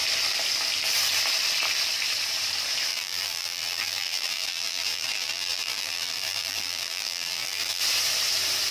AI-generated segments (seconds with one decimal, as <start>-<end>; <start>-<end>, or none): 2.9-7.8